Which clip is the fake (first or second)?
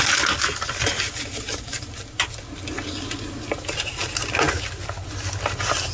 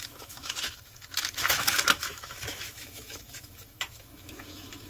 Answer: second